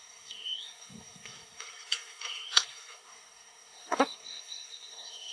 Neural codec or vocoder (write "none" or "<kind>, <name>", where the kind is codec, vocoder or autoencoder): codec, SNAC